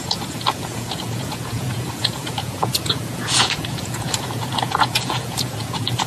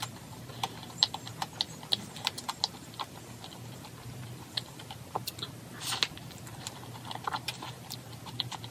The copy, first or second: first